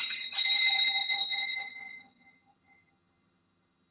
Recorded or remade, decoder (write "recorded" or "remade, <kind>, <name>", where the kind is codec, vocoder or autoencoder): remade, vocoder, HiFi-GAN